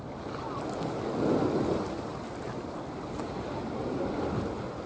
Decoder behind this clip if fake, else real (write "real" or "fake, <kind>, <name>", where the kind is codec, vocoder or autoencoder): real